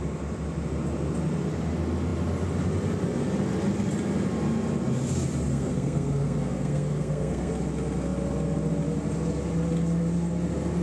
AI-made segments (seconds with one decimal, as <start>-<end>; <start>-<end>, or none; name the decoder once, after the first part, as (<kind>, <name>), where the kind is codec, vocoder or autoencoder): 5.5-7.5 (codec, SNAC)